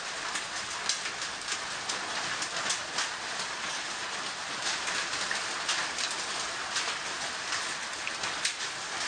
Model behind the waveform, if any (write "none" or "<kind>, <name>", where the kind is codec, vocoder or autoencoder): none